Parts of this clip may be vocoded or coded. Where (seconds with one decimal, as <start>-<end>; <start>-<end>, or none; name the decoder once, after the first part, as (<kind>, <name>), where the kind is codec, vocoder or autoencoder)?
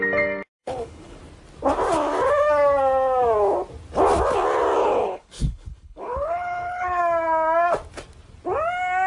0.6-1.2 (codec, HILCodec); 4.8-7.0